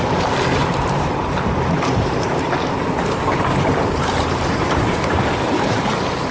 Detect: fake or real fake